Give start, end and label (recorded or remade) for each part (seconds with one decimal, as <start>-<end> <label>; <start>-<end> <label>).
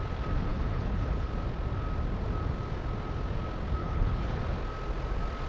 0.0-0.5 recorded; 0.5-1.3 remade; 1.3-3.8 recorded; 3.8-4.4 remade; 4.4-5.5 recorded